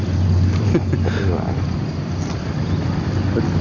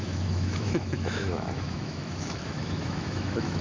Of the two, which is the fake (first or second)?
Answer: second